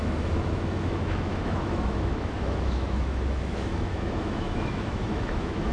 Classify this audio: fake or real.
fake